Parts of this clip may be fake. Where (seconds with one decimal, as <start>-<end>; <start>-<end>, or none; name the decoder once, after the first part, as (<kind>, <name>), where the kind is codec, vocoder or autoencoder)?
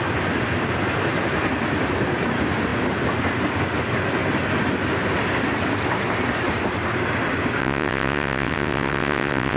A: 7.6-9.6 (vocoder, WaveNeXt)